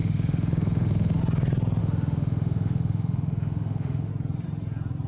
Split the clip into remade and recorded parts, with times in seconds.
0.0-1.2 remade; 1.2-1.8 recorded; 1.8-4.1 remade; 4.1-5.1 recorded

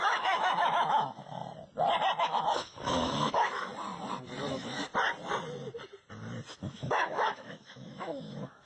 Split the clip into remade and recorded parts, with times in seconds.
0.0-1.4 remade; 1.4-2.2 recorded; 2.2-3.7 remade; 3.7-4.5 recorded; 4.5-4.9 remade; 4.9-6.5 recorded; 6.5-8.6 remade

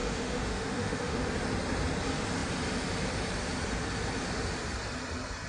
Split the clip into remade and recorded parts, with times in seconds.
0.0-1.2 remade; 1.2-5.5 recorded

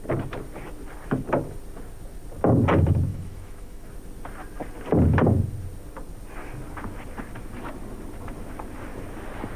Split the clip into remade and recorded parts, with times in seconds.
0.0-3.1 recorded; 3.1-3.9 remade; 3.9-9.6 recorded

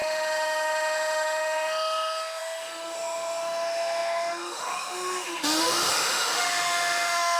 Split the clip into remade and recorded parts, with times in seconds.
0.0-7.4 remade

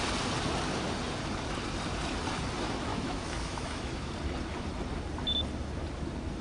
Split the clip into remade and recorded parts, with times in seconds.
0.0-2.9 recorded; 2.9-4.1 remade; 4.1-6.4 recorded